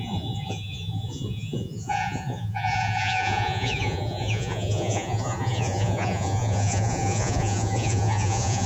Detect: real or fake fake